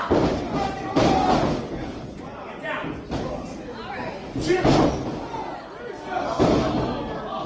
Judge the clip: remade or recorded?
recorded